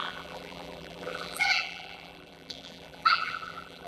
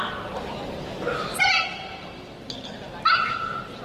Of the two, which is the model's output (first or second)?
first